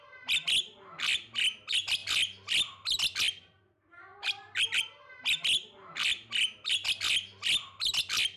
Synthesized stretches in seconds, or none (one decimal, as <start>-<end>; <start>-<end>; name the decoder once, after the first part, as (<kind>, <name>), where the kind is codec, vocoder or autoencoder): none